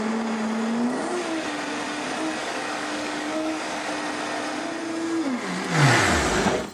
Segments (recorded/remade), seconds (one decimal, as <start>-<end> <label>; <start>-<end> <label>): 0.0-2.4 recorded; 2.4-3.9 remade; 3.9-6.7 recorded